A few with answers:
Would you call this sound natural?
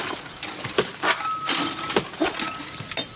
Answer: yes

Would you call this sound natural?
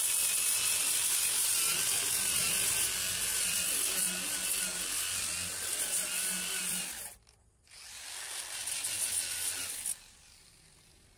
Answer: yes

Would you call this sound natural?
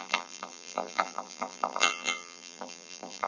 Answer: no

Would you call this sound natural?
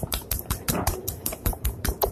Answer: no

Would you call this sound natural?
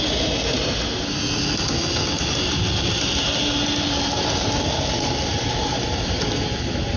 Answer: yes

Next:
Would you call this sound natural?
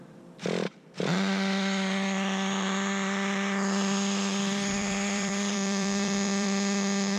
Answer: no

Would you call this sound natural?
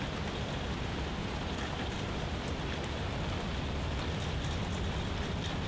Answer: no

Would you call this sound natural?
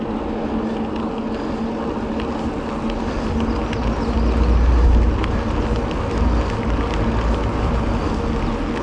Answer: yes